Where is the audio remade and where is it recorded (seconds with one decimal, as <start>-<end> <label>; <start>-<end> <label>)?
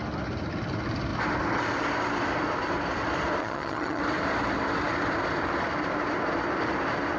0.0-3.4 recorded; 3.4-4.0 remade; 4.0-7.2 recorded